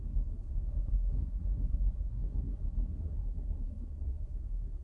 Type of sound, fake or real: fake